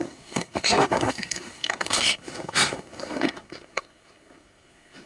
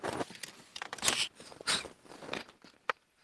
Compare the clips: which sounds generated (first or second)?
first